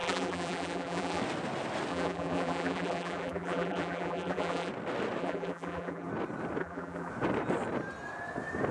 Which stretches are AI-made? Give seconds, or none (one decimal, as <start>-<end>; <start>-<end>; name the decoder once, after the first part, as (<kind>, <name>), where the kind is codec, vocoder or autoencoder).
0.0-1.2 (vocoder, BigVGAN v2); 1.9-4.7; 5.2-6.1; 6.6-7.1